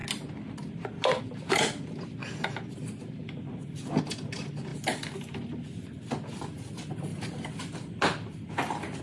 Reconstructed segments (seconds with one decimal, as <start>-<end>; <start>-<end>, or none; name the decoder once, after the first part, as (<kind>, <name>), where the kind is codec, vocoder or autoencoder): 7.1-9.0 (vocoder, BigVGAN v2)